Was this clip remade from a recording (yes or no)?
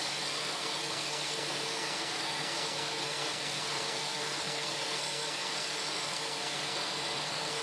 yes